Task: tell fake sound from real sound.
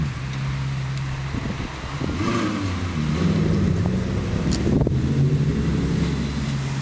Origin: real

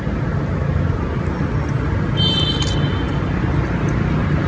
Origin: real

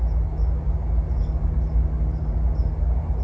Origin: real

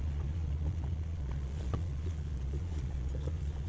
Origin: fake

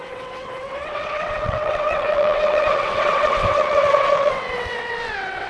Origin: fake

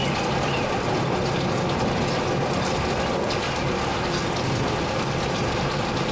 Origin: real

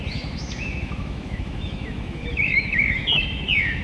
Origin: fake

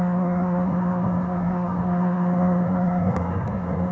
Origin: fake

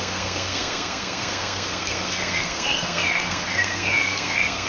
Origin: fake